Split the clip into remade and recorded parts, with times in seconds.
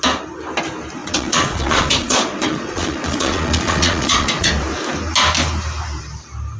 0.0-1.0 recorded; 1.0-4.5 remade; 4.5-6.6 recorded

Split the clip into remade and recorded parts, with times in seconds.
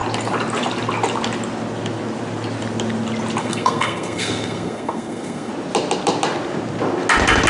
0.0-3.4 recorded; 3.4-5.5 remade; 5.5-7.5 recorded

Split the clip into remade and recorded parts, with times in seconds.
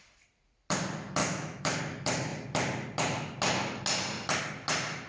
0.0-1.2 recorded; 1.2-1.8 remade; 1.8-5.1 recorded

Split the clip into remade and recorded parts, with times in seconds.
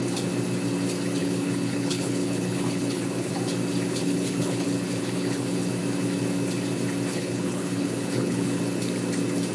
0.0-1.2 recorded; 1.2-3.3 remade; 3.3-3.9 recorded; 3.9-5.7 remade; 5.7-7.1 recorded; 7.1-8.6 remade; 8.6-9.5 recorded